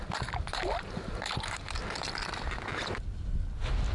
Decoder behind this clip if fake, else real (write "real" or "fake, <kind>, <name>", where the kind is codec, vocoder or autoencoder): real